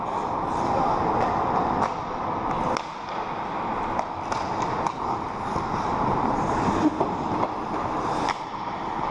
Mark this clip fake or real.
real